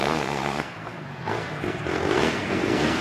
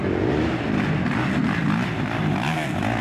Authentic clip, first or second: second